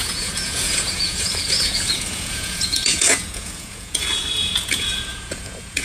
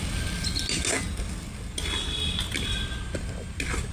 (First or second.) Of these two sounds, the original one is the second